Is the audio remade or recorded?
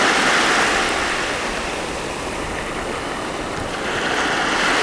recorded